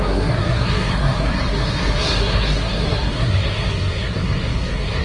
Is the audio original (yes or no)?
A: no